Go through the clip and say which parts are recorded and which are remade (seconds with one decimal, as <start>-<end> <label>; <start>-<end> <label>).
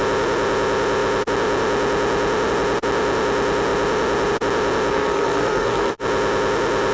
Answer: 0.0-4.9 recorded; 4.9-5.9 remade; 5.9-6.9 recorded